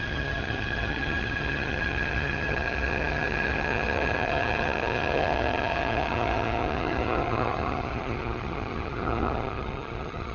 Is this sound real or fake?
fake